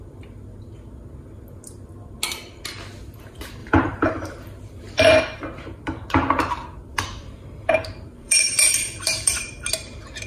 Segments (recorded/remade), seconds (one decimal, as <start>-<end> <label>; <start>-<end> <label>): 0.0-3.6 recorded; 3.6-5.2 remade; 5.2-6.9 recorded; 6.9-9.5 remade; 9.5-10.3 recorded